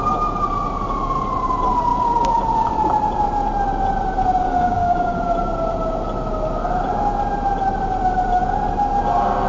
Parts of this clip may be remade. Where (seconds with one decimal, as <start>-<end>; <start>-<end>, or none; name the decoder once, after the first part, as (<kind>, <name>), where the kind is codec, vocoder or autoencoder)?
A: 4.4-5.2 (codec, DAC)